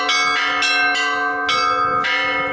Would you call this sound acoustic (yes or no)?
yes